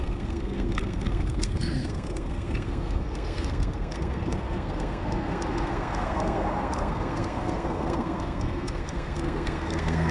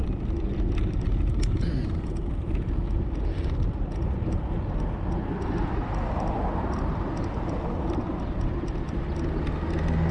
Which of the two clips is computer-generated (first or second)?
first